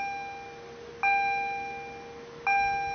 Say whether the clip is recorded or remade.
recorded